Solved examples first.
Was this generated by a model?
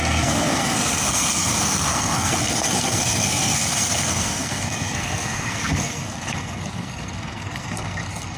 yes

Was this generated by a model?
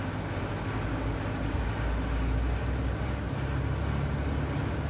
no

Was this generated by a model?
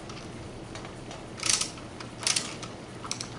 no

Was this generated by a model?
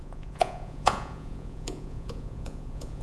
yes